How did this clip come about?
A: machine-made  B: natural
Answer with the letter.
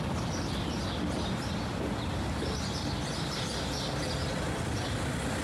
B